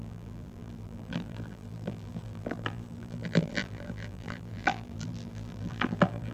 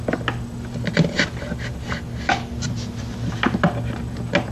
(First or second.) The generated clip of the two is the first